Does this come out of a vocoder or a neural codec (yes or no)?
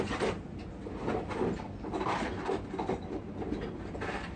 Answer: no